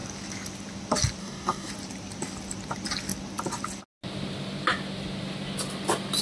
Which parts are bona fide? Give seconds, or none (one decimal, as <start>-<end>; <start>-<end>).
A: 0.0-1.2; 1.7-6.2